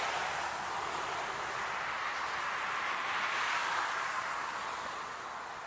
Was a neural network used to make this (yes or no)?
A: no